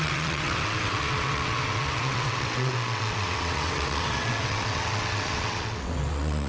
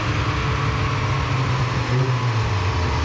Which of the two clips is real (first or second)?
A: second